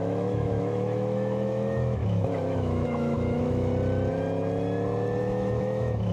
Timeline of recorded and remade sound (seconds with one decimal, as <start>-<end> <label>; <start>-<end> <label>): 0.0-3.7 remade; 3.7-5.2 recorded; 5.2-6.1 remade